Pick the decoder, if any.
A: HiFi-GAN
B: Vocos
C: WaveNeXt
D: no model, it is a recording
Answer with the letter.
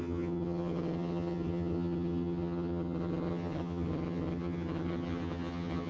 A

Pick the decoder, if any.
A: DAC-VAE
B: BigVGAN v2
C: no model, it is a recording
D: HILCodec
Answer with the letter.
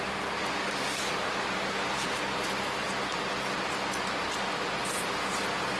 C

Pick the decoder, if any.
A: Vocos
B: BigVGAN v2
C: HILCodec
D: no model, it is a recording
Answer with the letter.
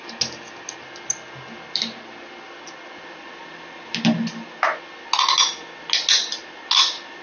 D